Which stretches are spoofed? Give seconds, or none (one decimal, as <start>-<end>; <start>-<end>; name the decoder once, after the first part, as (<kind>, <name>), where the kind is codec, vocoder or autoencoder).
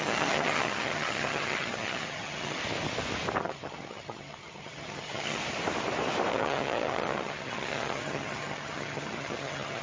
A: 0.0-2.6 (vocoder, HiFi-GAN); 3.4-5.4; 6.3-9.8